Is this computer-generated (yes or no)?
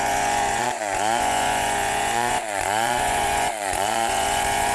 yes